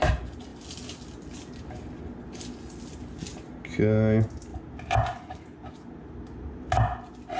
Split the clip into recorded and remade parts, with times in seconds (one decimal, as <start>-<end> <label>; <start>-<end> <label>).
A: 0.0-7.4 recorded